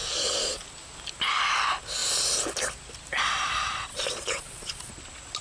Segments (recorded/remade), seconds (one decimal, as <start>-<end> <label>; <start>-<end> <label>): 0.0-0.6 remade; 0.6-3.9 recorded; 3.9-4.9 remade; 4.9-5.4 recorded